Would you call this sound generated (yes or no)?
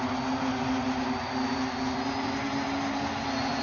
no